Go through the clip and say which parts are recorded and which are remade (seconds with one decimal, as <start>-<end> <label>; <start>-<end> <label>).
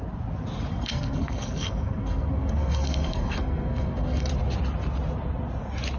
0.0-0.7 recorded; 0.7-4.3 remade; 4.3-6.0 recorded